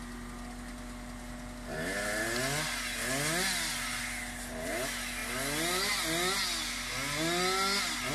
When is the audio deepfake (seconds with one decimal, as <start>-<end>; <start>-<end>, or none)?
none